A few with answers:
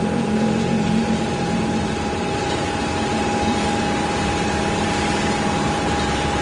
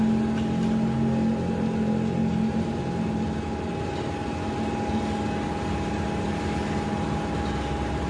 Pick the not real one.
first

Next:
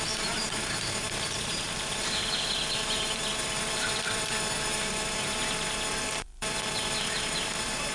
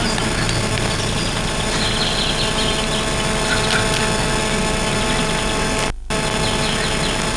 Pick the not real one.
first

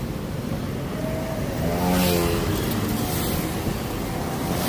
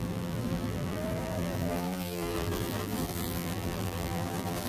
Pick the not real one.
second